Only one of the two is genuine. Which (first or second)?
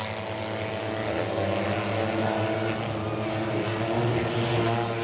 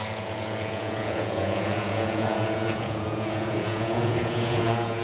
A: first